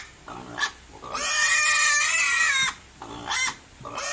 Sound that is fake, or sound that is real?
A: real